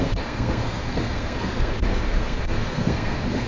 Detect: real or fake fake